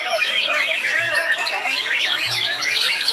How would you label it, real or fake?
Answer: fake